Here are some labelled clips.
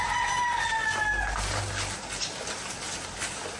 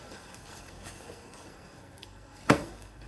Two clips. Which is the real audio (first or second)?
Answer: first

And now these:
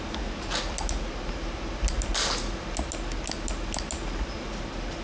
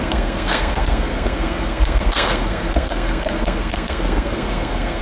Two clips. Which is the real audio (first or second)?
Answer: first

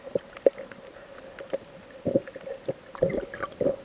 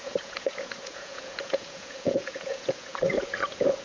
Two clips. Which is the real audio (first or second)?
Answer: first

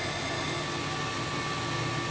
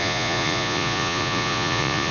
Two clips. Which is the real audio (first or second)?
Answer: first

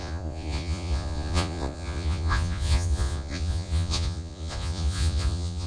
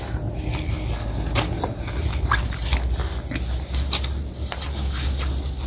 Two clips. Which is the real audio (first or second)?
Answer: second